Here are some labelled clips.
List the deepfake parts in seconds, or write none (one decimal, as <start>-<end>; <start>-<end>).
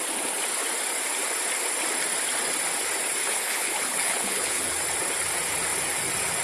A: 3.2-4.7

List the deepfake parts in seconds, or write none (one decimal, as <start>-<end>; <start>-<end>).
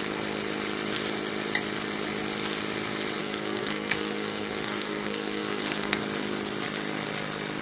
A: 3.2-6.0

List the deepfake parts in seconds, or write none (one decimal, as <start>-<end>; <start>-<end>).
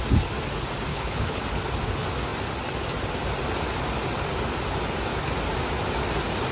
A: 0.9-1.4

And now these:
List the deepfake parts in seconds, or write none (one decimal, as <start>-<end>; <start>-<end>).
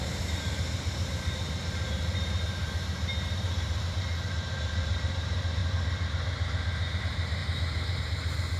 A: 0.0-5.6; 7.0-8.6